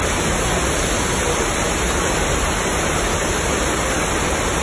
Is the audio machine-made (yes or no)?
no